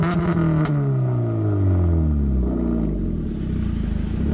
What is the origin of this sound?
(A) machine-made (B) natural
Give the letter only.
B